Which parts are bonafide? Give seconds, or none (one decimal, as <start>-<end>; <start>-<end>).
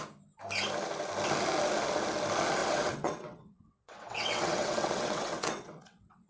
0.0-2.6